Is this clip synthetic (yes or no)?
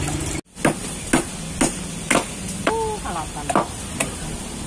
no